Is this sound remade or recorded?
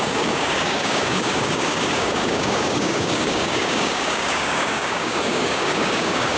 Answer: remade